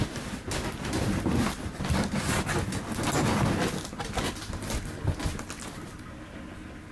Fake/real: real